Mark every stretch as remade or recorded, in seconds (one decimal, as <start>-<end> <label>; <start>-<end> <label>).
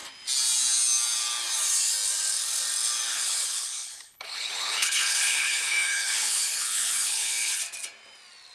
0.0-3.1 recorded; 3.1-7.6 remade; 7.6-8.5 recorded